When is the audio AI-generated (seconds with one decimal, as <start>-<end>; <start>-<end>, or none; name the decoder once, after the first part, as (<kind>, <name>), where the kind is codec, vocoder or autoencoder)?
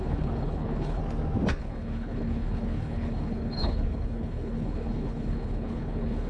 0.0-1.0 (codec, HILCodec); 1.6-6.3